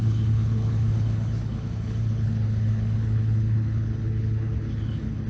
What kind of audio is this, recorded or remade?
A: remade